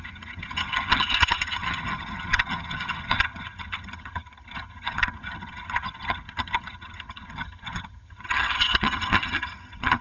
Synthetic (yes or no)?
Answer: yes